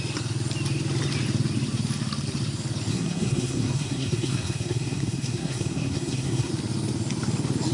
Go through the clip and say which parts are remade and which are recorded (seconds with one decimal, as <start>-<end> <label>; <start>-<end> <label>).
0.0-2.9 recorded; 2.9-6.5 remade; 6.5-7.7 recorded